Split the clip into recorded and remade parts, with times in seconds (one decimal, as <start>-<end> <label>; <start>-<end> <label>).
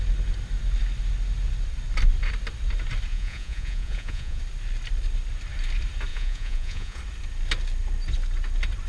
0.0-3.1 recorded; 3.1-4.4 remade; 4.4-6.1 recorded; 6.1-7.0 remade; 7.0-8.9 recorded